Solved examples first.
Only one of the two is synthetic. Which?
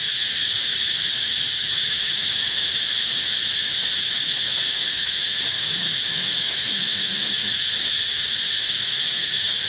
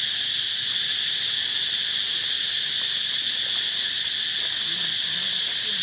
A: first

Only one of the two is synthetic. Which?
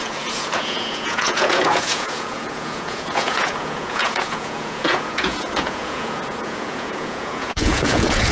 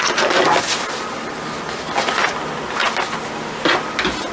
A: first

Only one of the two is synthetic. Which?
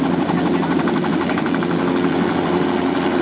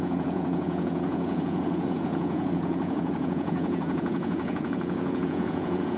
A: second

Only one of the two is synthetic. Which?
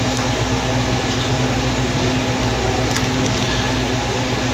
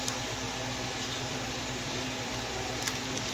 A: second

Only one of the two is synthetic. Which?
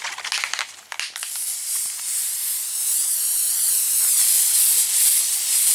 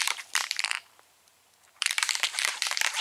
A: second